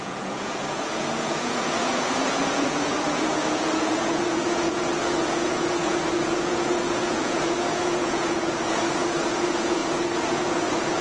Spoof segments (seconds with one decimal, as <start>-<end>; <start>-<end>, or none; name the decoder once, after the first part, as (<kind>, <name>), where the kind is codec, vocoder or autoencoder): 0.0-11.0 (vocoder, Vocos)